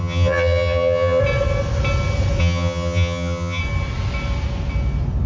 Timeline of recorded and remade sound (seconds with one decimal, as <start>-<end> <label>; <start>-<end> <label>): 0.0-1.2 remade; 1.2-2.4 recorded; 2.4-3.6 remade; 3.6-5.3 recorded